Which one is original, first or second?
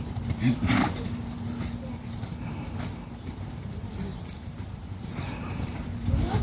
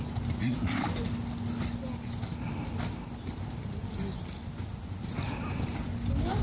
second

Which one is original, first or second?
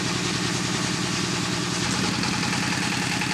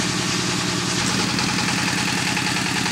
second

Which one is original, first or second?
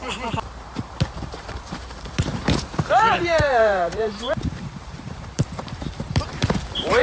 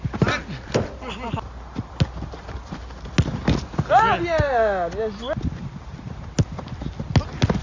second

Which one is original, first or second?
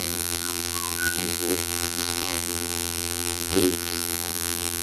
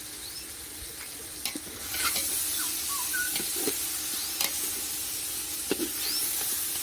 second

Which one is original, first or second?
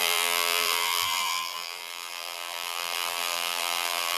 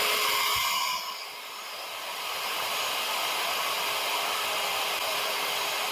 second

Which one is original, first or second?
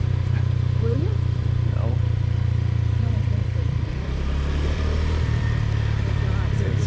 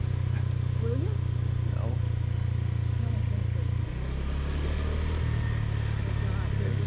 second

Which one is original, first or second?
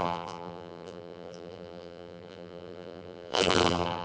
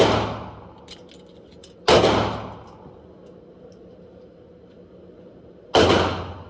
second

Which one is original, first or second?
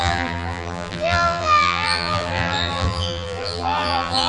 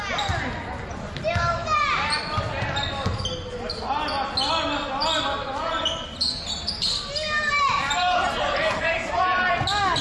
second